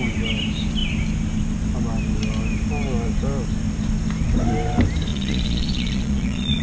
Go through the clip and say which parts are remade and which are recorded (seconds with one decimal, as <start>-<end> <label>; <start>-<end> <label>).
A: 0.0-5.1 recorded; 5.1-6.6 remade